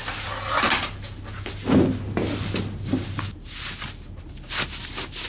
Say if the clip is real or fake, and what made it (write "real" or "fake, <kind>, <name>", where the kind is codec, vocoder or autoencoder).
real